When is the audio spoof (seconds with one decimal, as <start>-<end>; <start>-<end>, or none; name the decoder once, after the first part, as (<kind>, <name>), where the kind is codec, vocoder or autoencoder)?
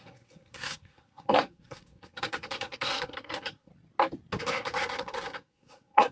0.0-3.7 (codec, SNAC); 4.4-6.1